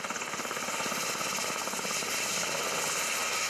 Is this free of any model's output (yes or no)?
yes